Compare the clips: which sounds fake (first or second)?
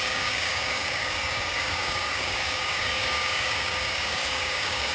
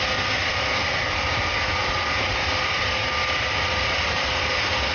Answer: first